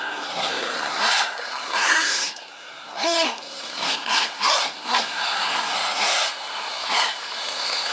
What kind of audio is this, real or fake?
fake